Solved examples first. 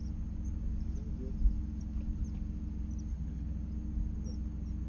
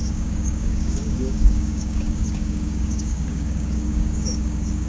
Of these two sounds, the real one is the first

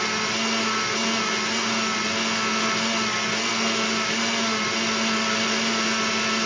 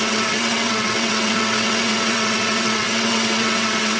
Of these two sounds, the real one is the first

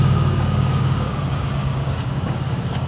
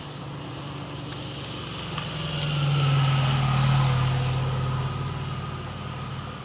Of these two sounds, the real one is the second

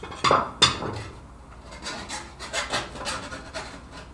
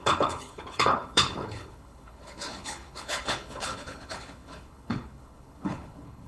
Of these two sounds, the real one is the first